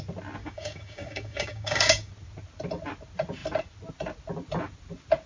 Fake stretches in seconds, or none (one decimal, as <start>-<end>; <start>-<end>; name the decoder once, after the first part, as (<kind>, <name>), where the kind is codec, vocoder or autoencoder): 0.4-2.1 (codec, DAC)